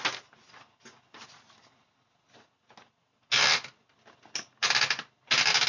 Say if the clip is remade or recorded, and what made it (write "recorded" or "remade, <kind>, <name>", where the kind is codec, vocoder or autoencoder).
recorded